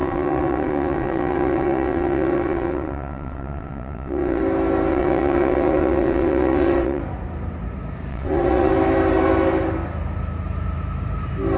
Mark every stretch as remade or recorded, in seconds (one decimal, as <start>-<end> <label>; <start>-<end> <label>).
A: 0.0-4.4 remade; 4.4-4.9 recorded; 4.9-7.0 remade; 7.0-8.1 recorded; 8.1-8.7 remade; 8.7-11.6 recorded